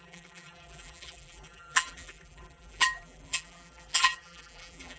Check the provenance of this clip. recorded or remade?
remade